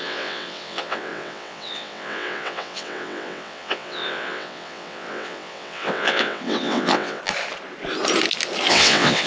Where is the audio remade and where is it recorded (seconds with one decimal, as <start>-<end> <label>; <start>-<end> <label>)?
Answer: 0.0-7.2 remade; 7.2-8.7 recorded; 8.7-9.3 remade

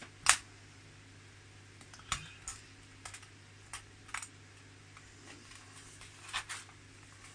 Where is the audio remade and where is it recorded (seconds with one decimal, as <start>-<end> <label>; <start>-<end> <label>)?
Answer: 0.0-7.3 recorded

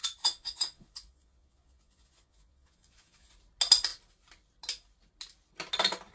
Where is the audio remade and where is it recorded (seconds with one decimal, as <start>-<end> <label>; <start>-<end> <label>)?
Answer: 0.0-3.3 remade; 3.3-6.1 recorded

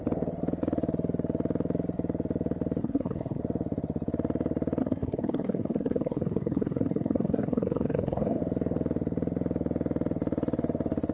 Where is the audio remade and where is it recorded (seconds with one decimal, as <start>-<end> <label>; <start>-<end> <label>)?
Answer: 0.0-2.8 recorded; 2.8-3.4 remade; 3.4-4.8 recorded; 4.8-8.4 remade; 8.4-11.1 recorded

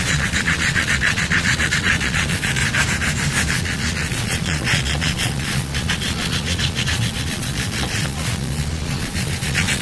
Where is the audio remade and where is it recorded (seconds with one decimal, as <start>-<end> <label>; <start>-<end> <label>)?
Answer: 0.0-2.6 remade; 2.6-3.5 recorded; 3.5-9.8 remade

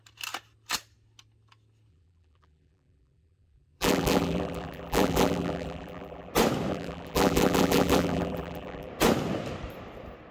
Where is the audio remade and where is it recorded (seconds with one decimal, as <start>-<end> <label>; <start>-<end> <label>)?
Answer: 0.0-1.9 recorded; 1.9-6.3 remade; 6.3-6.7 recorded; 6.7-8.9 remade; 8.9-10.3 recorded

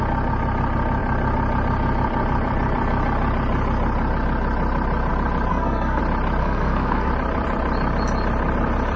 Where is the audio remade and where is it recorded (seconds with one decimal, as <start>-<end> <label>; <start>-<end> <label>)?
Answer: 0.0-5.5 recorded; 5.5-6.0 remade; 6.0-6.4 recorded; 6.4-7.1 remade; 7.1-9.0 recorded